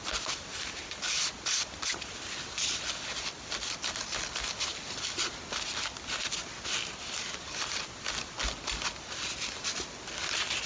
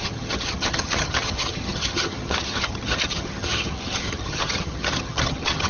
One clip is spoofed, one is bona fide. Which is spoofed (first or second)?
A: second